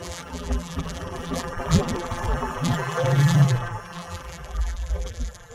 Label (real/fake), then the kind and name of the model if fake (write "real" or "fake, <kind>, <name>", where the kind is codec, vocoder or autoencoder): fake, vocoder, BigVGAN v2